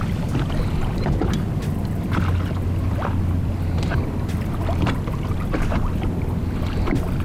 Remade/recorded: recorded